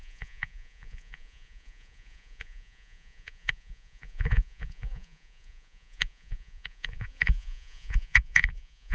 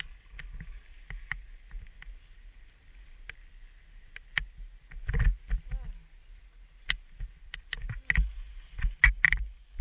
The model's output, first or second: first